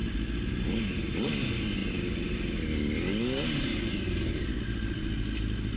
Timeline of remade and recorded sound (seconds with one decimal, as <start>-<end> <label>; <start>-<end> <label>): 0.0-5.8 recorded